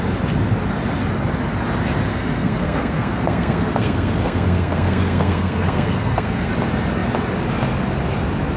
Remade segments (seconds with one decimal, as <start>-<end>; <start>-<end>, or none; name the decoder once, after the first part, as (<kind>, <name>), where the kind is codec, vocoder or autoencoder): 2.1-6.5 (codec, SNAC)